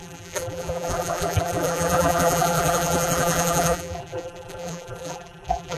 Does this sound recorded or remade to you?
remade